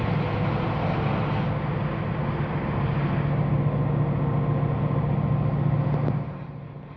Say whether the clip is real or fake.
real